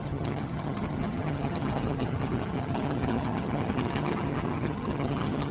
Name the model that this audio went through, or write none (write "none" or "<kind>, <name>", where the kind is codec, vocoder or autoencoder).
vocoder, HiFi-GAN